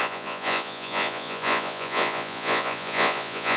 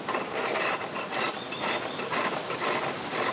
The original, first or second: second